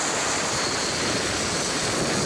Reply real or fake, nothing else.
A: real